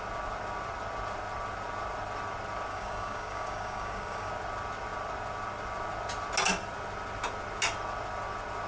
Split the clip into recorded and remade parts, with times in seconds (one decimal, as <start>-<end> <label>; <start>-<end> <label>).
0.0-2.7 recorded; 2.7-4.3 remade; 4.3-8.7 recorded